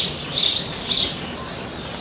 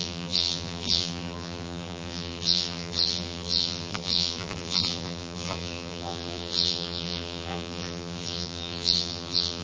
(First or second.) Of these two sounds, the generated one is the second